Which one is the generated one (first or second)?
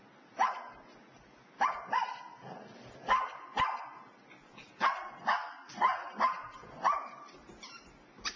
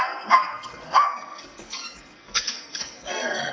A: second